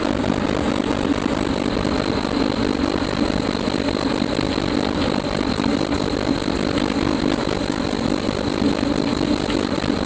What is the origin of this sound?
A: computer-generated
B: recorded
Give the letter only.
B